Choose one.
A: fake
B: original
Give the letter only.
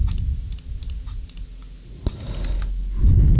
B